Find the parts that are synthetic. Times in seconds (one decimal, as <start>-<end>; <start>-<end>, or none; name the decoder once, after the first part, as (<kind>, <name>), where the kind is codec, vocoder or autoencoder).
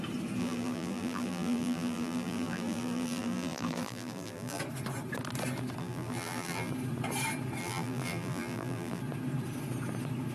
0.4-4.6 (vocoder, BigVGAN v2); 5.8-6.7; 7.6-9.0